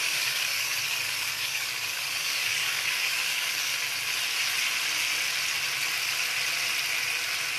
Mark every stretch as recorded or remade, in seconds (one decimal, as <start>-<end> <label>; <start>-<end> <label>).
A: 0.0-3.7 remade; 3.7-7.6 recorded